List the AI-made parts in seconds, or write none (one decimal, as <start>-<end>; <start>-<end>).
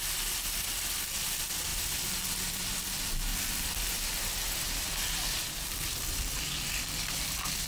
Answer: 1.7-2.5; 3.3-7.7